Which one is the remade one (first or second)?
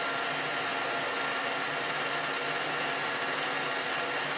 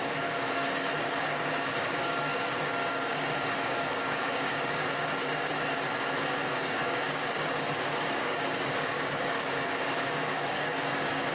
second